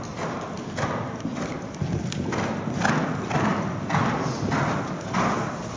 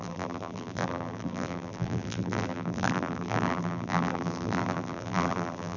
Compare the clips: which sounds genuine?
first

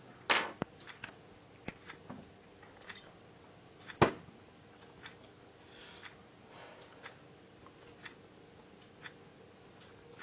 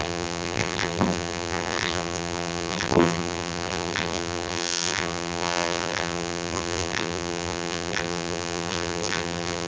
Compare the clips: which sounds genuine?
first